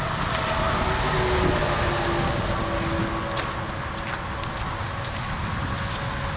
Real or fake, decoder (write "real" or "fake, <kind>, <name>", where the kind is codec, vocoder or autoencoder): real